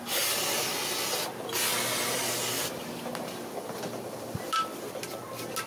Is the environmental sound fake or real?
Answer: real